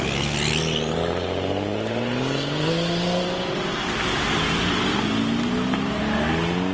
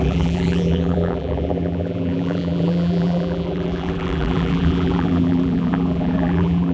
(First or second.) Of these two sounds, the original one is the first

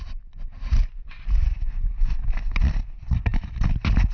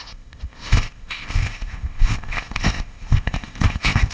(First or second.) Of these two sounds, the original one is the first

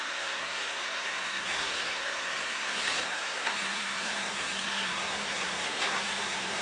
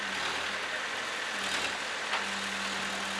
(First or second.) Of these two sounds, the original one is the second